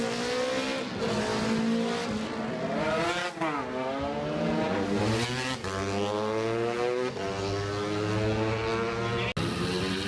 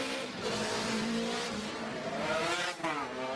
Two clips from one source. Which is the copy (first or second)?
second